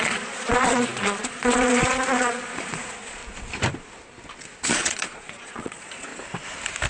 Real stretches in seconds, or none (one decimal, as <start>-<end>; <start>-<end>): 3.2-4.7; 6.1-6.9

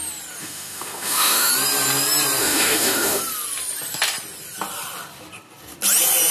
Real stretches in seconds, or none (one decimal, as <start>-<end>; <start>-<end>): 0.0-0.4; 1.5-2.4; 3.2-6.3

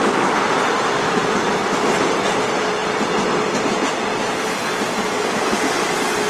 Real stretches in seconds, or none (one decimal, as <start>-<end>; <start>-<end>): 0.0-1.2; 1.7-6.3

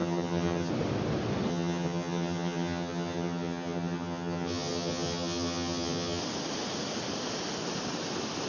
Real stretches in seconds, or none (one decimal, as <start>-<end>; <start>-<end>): 0.7-1.5; 6.2-8.5

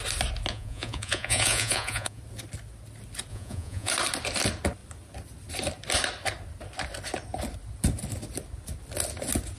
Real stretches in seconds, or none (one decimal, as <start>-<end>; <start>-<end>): 0.0-0.5; 2.2-3.3; 3.9-9.6

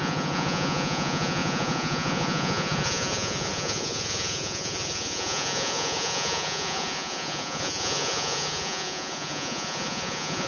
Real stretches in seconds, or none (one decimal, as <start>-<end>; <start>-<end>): none

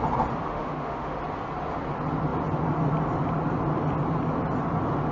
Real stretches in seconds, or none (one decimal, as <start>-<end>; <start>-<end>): 0.0-0.5; 1.2-5.1